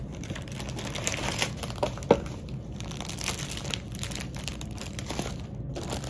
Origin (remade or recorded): remade